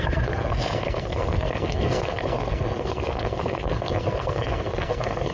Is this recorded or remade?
remade